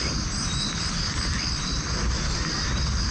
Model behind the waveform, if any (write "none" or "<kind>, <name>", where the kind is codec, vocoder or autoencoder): none